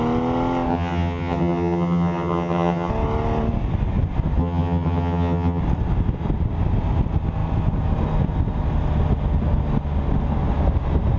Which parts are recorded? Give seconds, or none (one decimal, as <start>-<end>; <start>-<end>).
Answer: 0.0-0.7; 2.9-4.4; 5.6-11.2